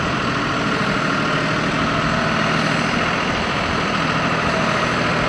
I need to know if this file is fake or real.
real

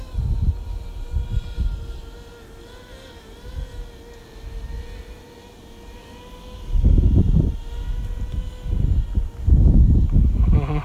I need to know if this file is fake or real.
real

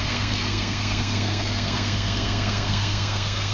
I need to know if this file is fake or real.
fake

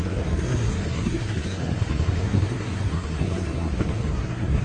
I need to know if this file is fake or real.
fake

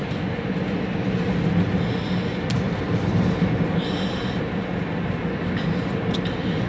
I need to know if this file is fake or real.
real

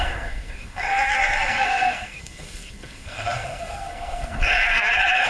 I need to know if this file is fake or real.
fake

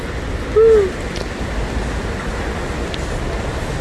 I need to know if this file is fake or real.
real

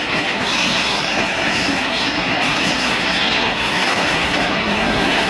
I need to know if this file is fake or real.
fake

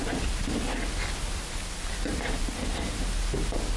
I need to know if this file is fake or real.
real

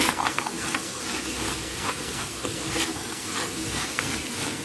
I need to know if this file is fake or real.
fake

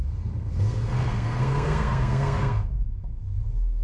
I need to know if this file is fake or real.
fake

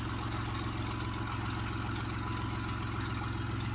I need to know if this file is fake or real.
real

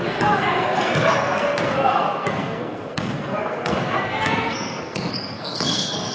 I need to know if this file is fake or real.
fake